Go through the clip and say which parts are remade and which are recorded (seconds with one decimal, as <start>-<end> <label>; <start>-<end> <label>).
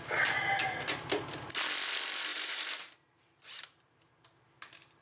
0.0-2.3 recorded; 2.3-4.0 remade; 4.0-5.0 recorded